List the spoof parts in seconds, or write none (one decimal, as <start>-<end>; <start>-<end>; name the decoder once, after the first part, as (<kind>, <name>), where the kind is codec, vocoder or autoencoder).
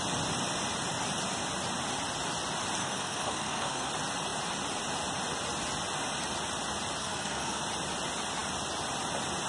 2.8-3.9 (codec, SNAC); 7.0-7.6